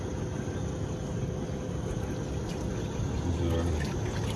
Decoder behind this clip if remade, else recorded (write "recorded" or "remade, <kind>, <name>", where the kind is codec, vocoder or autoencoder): recorded